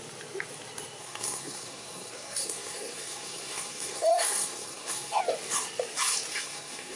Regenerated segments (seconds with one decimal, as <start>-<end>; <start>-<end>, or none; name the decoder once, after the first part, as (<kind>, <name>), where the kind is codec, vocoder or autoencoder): 1.0-5.2 (codec, SNAC); 6.3-7.0